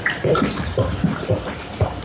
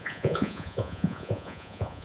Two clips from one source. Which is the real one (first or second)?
first